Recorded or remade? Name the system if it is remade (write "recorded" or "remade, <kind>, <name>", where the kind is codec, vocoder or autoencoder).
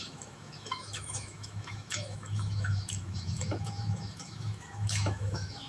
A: remade, autoencoder, DAC-VAE